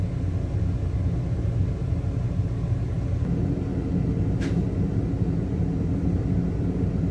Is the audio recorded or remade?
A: recorded